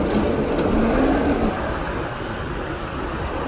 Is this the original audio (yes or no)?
yes